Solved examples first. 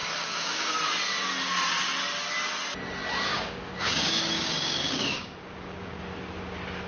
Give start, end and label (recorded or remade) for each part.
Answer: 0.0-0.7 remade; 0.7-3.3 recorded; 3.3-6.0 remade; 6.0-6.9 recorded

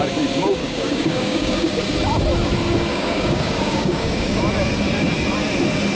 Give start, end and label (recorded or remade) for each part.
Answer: 0.0-0.6 recorded; 0.6-1.8 remade; 1.8-2.9 recorded; 2.9-4.4 remade; 4.4-5.9 recorded